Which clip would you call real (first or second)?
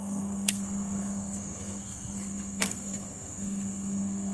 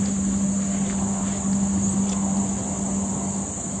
second